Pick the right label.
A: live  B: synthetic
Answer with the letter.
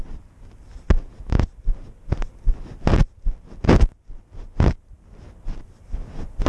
A